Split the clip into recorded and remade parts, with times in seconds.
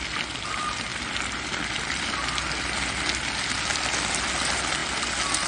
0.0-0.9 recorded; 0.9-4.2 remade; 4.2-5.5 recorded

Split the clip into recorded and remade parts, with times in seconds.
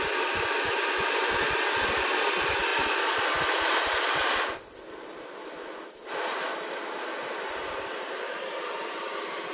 0.0-9.5 recorded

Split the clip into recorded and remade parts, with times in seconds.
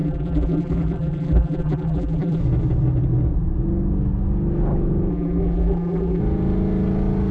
0.0-2.4 remade; 2.4-5.1 recorded; 5.1-6.2 remade; 6.2-7.3 recorded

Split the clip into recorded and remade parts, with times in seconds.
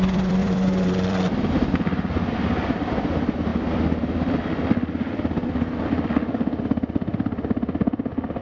0.0-8.4 remade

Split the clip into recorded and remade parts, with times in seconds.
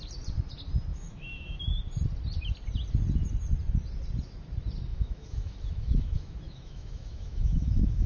0.0-0.9 recorded; 0.9-1.6 remade; 1.6-4.9 recorded; 4.9-8.1 remade